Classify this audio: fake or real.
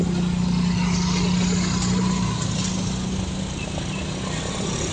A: real